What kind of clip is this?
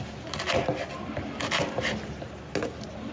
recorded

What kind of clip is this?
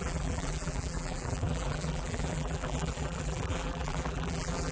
remade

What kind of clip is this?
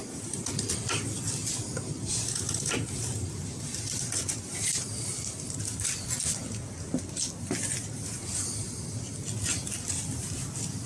recorded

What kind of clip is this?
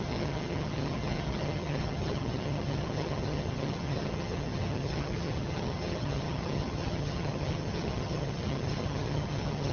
remade